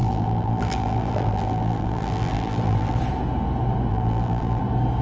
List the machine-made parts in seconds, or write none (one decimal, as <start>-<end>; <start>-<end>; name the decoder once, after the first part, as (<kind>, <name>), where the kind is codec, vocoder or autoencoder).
0.0-3.0 (vocoder, BigVGAN v2); 3.9-4.6